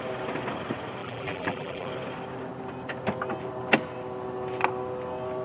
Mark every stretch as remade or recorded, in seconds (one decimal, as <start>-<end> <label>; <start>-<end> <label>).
0.0-1.0 recorded; 1.0-1.9 remade; 1.9-5.4 recorded